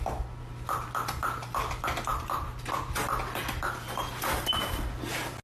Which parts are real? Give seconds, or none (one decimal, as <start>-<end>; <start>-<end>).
0.0-5.4